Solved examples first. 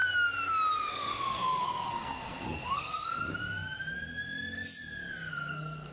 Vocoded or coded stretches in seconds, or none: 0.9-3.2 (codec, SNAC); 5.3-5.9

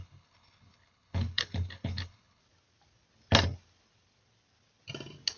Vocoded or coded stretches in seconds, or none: 0.0-2.4 (codec, HILCodec)

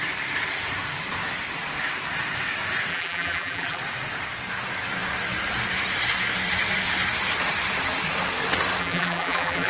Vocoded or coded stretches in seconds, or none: 2.9-3.8 (vocoder, BigVGAN v2); 8.8-9.7